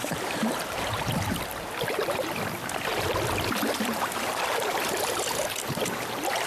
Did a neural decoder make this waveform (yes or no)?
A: yes